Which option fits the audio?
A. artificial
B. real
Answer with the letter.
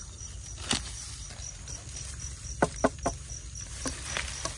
B